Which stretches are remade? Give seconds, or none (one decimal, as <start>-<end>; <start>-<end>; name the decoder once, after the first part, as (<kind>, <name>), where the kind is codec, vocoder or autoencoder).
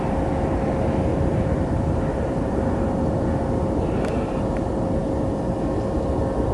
1.1-4.5 (vocoder, BigVGAN v2)